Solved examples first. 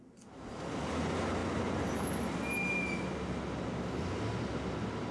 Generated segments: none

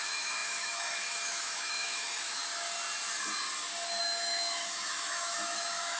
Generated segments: 0.0-2.4 (autoencoder, DAC-VAE); 4.0-6.0

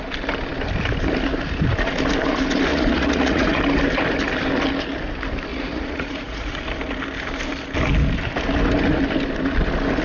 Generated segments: 2.7-3.6 (vocoder, Vocos); 5.5-6.6